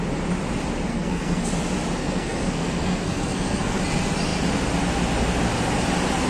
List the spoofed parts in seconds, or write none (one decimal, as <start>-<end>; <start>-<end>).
0.9-1.5; 2.0-3.8